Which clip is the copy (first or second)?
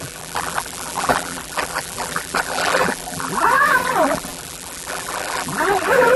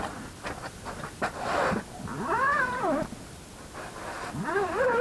first